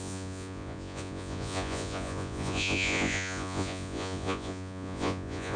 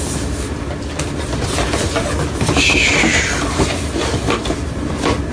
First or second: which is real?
second